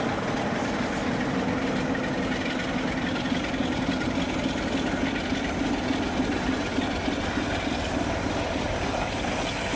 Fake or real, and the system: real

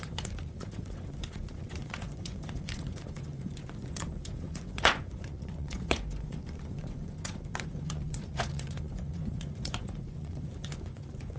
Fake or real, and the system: fake, vocoder, Vocos